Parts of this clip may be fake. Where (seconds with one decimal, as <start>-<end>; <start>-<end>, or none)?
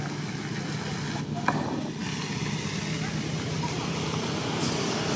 none